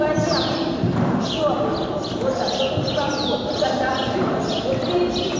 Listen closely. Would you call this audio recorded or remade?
recorded